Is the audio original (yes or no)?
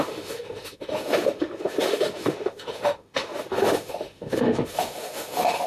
no